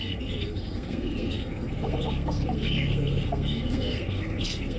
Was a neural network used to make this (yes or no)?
yes